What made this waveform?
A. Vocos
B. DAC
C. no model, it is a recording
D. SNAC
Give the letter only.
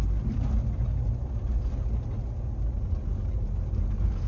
C